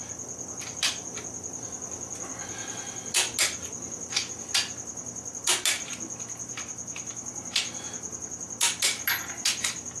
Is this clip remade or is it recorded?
recorded